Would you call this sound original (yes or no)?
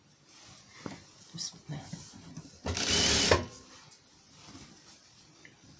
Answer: yes